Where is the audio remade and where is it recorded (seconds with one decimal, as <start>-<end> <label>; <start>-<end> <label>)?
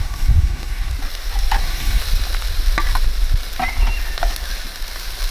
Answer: 0.0-0.9 remade; 0.9-1.6 recorded; 1.6-2.0 remade; 2.0-5.3 recorded